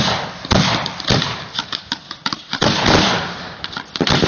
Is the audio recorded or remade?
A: recorded